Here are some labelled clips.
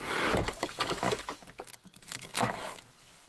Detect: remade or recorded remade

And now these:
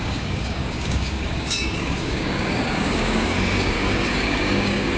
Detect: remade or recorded remade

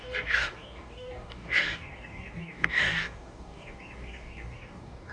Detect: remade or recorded remade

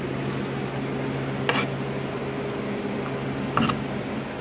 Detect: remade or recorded recorded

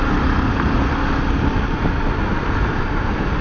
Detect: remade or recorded recorded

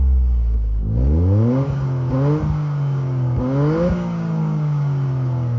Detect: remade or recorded remade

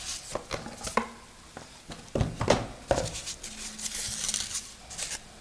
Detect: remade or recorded recorded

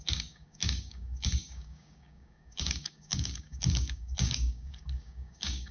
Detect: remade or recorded remade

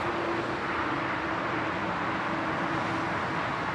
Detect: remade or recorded recorded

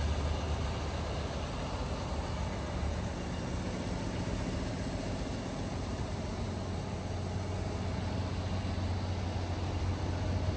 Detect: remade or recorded recorded